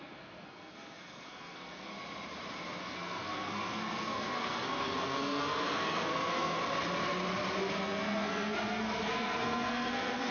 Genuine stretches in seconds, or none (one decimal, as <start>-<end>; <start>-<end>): 1.9-2.8; 6.6-7.6